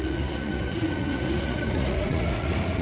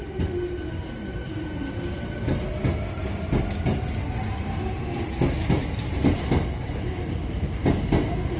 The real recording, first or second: second